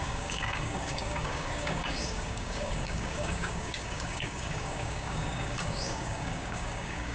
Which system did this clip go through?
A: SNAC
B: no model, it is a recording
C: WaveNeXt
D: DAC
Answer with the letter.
D